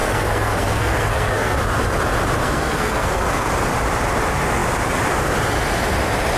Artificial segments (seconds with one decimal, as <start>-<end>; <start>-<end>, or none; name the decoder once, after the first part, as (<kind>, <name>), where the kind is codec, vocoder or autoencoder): 0.0-1.6 (codec, SNAC); 2.4-3.5